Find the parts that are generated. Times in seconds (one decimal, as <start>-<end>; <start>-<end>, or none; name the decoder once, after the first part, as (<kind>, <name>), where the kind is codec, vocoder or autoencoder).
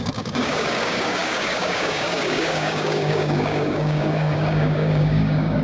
0.0-5.6 (codec, DAC)